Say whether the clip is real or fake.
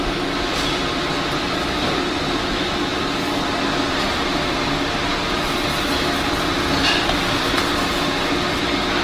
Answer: real